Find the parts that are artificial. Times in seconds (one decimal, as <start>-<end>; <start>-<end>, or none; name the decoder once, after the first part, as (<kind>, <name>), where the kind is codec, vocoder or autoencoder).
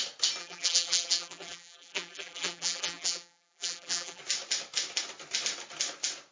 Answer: 0.4-4.2 (vocoder, BigVGAN v2)